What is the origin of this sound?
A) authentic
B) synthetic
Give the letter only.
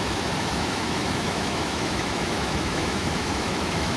B